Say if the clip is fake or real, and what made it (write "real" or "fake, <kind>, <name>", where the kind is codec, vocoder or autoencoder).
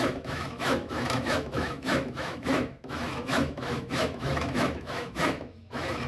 fake, autoencoder, DAC-VAE